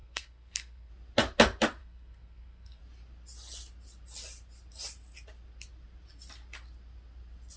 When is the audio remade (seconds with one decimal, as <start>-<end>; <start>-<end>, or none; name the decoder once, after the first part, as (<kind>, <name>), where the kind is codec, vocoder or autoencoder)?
0.0-0.9 (codec, SNAC); 1.8-2.8